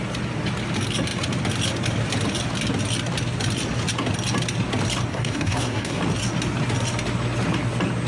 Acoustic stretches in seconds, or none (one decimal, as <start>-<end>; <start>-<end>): 0.0-5.1; 6.0-8.1